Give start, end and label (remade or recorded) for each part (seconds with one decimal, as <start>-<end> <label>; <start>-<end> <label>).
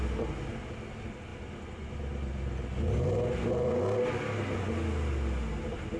0.0-6.0 recorded